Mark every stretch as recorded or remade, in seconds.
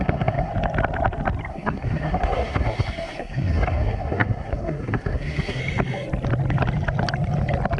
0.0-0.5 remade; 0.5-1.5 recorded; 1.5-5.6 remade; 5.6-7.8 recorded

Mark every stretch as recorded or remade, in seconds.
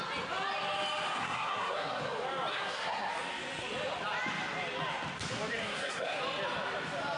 0.0-1.2 recorded; 1.2-2.0 remade; 2.0-2.5 recorded; 2.5-3.1 remade; 3.1-5.6 recorded; 5.6-6.2 remade; 6.2-7.2 recorded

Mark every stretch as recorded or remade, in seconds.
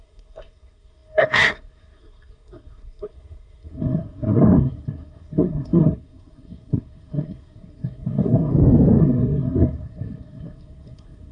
0.0-8.5 remade; 8.5-9.0 recorded; 9.0-11.3 remade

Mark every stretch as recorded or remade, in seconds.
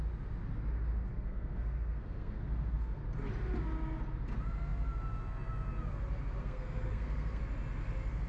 0.0-1.1 recorded; 1.1-3.0 remade; 3.0-6.4 recorded; 6.4-7.4 remade; 7.4-8.3 recorded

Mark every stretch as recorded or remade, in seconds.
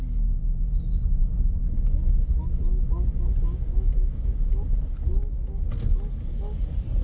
0.0-7.0 recorded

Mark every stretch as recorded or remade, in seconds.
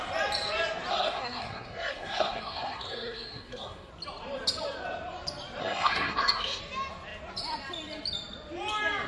0.0-0.9 recorded; 0.9-3.9 remade; 3.9-5.6 recorded; 5.6-6.6 remade; 6.6-9.1 recorded